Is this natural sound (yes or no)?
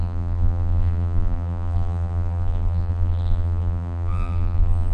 no